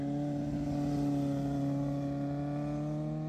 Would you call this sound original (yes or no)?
yes